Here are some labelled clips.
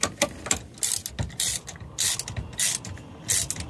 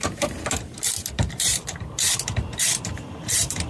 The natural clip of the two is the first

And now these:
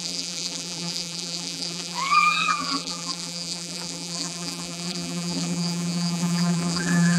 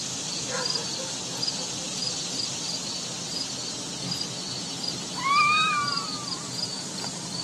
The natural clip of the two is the second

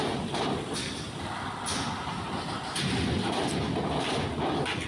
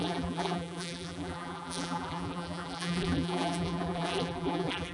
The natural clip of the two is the first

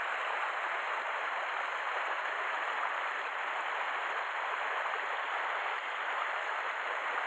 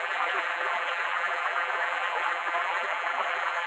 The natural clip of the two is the first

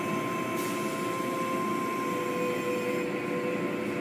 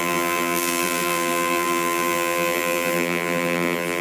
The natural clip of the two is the first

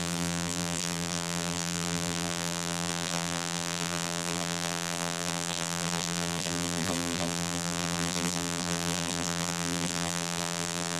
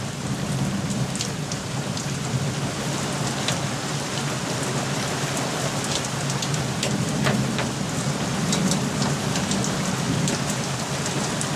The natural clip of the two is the second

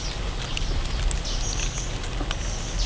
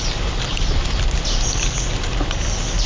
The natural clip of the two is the first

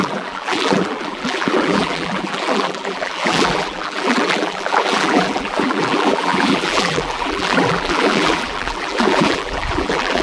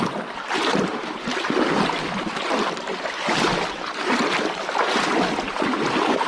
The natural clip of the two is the second